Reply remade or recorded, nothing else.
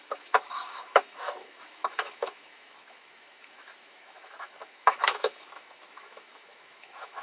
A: remade